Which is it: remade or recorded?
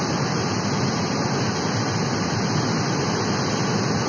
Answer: recorded